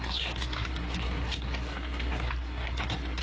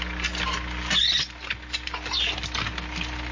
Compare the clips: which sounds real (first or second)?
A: second